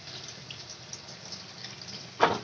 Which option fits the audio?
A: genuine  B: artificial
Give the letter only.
A